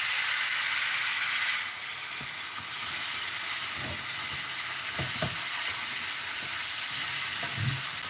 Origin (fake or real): real